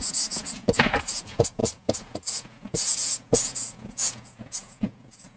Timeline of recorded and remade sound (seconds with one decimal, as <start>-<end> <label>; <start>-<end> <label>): 0.0-5.4 remade